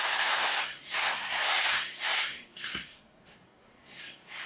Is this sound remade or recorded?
remade